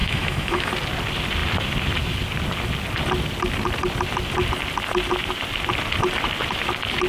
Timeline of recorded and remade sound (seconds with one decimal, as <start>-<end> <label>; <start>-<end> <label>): 0.0-0.7 remade; 0.7-7.1 recorded